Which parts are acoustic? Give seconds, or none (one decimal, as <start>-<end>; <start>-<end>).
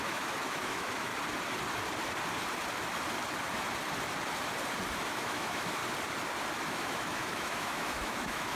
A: 1.1-5.1; 5.8-6.7